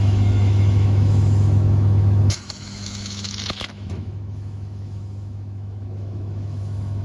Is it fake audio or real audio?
fake